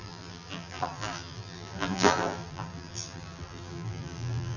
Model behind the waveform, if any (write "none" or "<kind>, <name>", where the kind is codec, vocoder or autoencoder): vocoder, BigVGAN v2